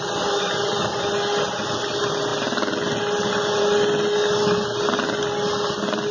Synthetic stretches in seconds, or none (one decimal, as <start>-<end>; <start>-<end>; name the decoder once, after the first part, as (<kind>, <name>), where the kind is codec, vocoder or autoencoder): none